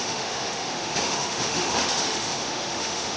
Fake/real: fake